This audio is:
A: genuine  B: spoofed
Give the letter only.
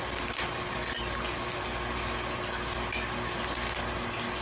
A